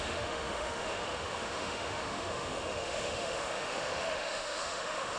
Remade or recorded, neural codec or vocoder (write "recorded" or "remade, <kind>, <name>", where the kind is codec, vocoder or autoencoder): remade, autoencoder, DAC-VAE